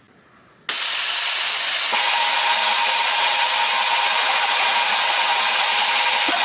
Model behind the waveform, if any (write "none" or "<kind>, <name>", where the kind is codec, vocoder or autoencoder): none